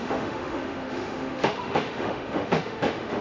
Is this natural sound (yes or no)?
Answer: no